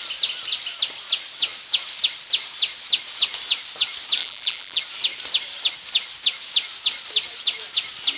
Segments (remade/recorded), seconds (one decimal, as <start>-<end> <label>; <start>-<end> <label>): 0.0-4.2 recorded; 4.2-4.8 remade; 4.8-8.2 recorded

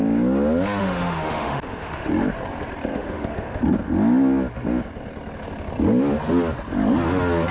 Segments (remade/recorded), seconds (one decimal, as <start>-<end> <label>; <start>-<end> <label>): 0.0-0.8 recorded; 0.8-2.1 remade; 2.1-2.9 recorded; 2.9-3.6 remade; 3.6-7.5 recorded

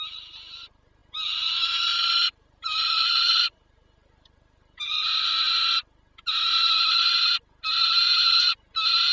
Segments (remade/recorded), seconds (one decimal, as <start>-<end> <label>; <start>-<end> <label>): 0.0-1.9 recorded; 1.9-5.5 remade; 5.5-9.1 recorded

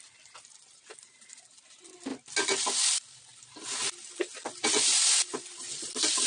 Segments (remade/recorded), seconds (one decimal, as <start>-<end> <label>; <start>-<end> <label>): 0.0-6.3 recorded

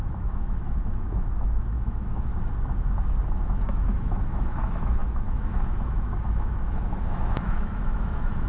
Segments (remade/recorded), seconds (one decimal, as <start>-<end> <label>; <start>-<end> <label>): 0.0-2.3 remade; 2.3-3.4 recorded; 3.4-8.5 remade

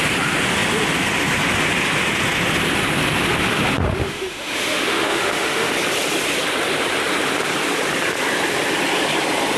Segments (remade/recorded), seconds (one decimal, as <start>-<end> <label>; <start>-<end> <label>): 0.0-4.0 recorded; 4.0-5.7 remade; 5.7-9.6 recorded

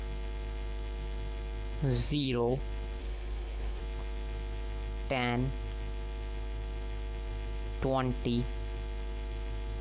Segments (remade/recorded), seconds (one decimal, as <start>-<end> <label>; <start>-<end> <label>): 0.0-2.0 recorded; 2.0-2.6 remade; 2.6-3.0 recorded; 3.0-3.8 remade; 3.8-9.8 recorded

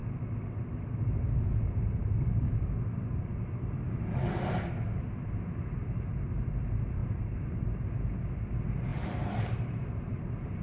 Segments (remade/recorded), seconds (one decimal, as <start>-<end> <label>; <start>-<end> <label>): 0.0-7.0 recorded; 7.0-7.6 remade; 7.6-8.9 recorded; 8.9-10.6 remade